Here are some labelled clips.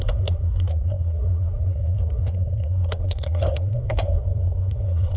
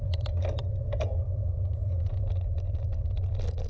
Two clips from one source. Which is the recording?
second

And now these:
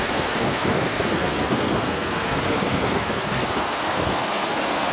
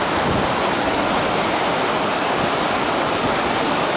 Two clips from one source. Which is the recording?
second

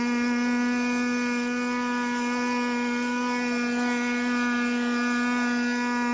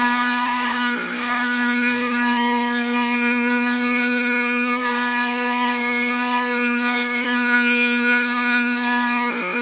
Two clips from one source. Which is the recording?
first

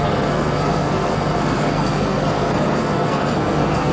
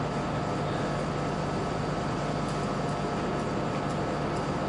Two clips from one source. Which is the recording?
second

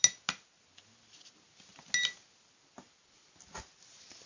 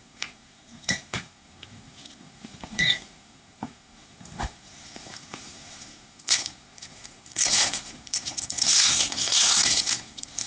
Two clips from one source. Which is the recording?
first